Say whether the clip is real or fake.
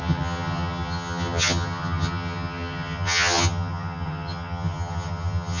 fake